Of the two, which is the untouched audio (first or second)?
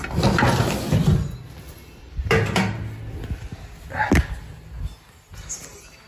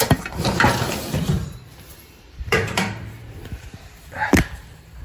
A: first